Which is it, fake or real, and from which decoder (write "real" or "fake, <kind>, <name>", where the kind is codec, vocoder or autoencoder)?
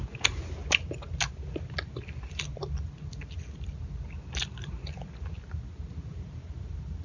real